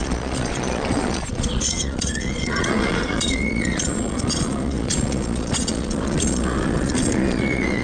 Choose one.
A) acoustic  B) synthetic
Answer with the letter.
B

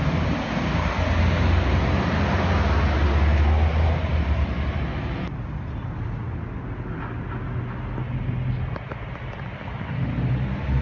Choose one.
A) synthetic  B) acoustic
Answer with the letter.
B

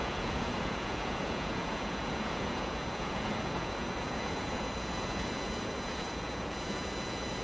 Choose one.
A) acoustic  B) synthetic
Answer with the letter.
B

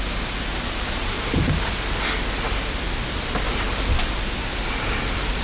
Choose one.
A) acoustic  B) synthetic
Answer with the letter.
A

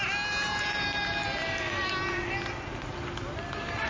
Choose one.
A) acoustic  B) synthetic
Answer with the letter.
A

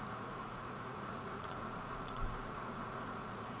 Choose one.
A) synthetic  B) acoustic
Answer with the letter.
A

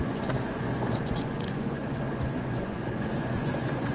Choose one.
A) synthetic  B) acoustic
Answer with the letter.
A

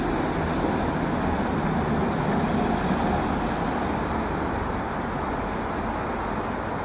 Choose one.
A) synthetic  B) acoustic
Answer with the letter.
B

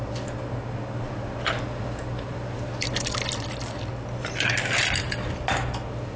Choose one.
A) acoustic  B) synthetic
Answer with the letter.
A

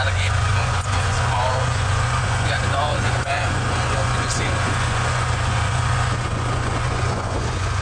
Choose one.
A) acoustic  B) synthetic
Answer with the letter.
B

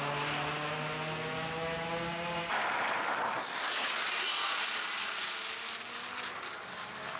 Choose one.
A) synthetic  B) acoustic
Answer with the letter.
B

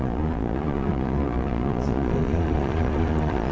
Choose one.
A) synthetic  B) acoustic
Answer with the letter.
A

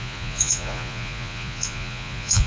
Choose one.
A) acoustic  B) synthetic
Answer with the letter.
B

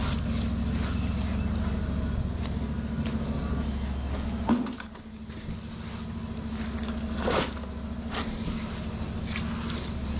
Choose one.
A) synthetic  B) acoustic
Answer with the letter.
B